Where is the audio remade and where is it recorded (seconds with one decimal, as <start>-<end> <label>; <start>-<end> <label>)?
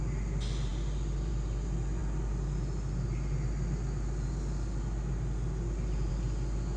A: 0.0-6.8 recorded